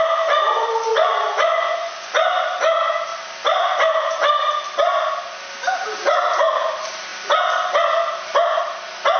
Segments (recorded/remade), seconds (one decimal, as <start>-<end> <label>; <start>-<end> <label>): 0.0-0.9 recorded; 0.9-2.1 remade; 2.1-9.2 recorded